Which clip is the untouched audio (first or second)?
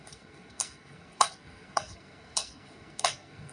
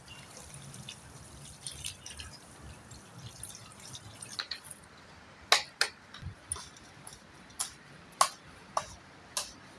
second